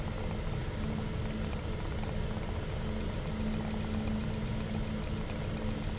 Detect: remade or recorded recorded